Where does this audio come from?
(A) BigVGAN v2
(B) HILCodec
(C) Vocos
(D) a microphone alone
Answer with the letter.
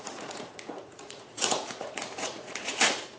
C